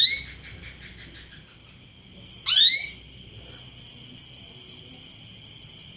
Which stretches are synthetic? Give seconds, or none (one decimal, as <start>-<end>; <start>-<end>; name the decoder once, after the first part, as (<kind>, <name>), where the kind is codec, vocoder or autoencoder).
none